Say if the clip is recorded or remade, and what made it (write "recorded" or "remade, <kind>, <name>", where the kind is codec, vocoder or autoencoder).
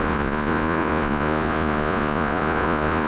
remade, vocoder, Vocos